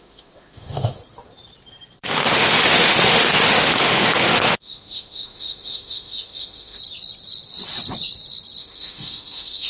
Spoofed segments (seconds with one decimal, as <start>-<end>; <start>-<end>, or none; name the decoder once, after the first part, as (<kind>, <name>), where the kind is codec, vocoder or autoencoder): 0.0-1.0 (autoencoder, DAC-VAE); 2.3-6.8; 8.6-9.7